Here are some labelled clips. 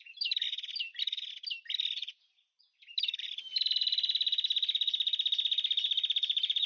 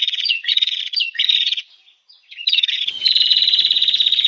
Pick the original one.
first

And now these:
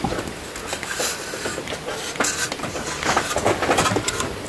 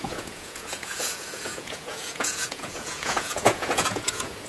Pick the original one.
first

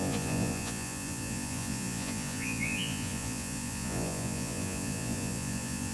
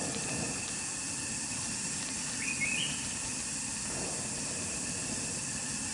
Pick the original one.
second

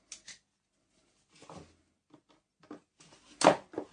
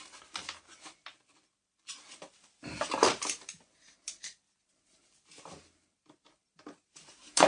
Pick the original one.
first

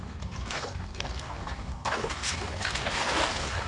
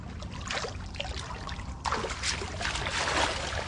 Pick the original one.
second